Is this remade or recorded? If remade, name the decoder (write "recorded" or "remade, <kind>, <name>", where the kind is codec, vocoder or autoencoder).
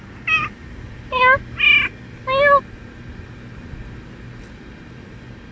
recorded